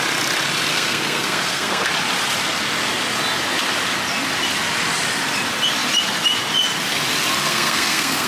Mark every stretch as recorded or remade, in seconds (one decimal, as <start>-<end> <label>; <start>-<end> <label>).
0.0-0.7 recorded; 0.7-1.9 remade; 1.9-7.4 recorded; 7.4-8.3 remade